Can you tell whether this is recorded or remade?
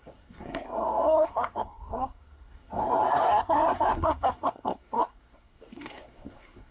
remade